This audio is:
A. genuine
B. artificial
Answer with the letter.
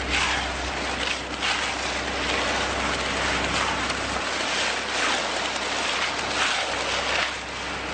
A